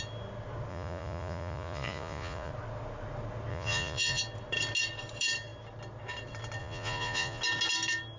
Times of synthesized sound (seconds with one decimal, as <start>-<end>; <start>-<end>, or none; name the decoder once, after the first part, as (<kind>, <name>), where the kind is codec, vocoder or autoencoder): 0.7-2.5 (vocoder, Vocos); 3.5-4.2; 6.6-7.4